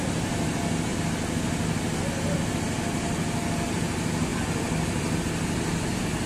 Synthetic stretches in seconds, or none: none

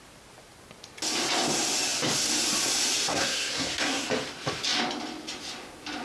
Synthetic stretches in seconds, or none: 3.1-4.1 (codec, SNAC)

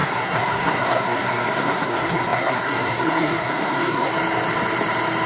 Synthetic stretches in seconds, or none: 0.0-4.1 (codec, SNAC)